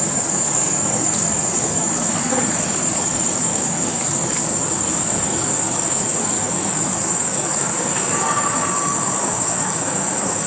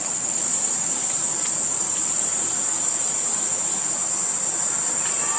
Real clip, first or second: second